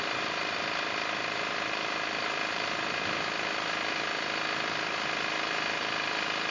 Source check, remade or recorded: recorded